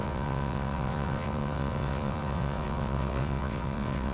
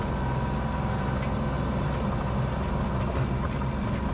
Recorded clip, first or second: second